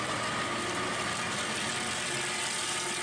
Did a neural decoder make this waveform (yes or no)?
no